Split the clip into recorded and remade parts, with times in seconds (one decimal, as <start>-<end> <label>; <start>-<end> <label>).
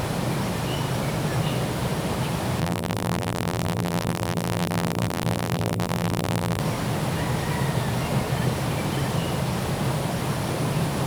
0.0-2.6 recorded; 2.6-6.6 remade; 6.6-11.1 recorded